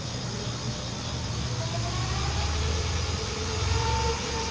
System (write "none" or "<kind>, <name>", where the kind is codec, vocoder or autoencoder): none